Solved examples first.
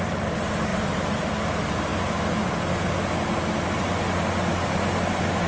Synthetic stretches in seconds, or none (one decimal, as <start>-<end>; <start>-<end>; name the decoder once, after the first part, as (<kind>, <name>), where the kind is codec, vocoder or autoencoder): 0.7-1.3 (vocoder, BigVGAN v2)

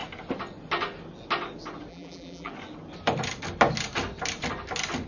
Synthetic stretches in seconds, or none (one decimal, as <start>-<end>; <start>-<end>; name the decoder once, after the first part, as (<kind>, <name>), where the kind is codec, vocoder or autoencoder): 1.9-2.5 (vocoder, BigVGAN v2)

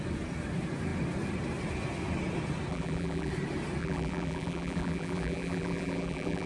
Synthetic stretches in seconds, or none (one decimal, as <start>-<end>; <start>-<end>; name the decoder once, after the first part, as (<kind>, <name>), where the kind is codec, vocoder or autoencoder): 2.7-3.3 (vocoder, BigVGAN v2); 3.8-6.5

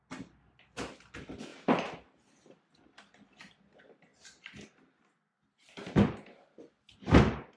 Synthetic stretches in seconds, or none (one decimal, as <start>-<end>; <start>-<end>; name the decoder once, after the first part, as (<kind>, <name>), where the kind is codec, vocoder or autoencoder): 4.1-6.4 (vocoder, BigVGAN v2)

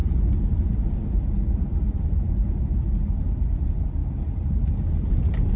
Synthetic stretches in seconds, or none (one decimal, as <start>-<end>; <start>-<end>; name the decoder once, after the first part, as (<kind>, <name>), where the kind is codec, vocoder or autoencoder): 4.0-5.1 (vocoder, BigVGAN v2)

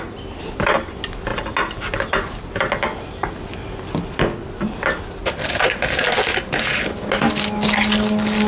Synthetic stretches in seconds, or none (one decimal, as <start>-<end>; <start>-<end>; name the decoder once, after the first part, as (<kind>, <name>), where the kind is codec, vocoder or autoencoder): none

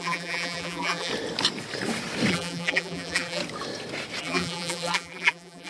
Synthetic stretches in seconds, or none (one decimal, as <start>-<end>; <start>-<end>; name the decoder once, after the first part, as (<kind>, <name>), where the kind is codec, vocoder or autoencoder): 0.0-1.1 (vocoder, BigVGAN v2); 2.3-3.4; 4.2-5.7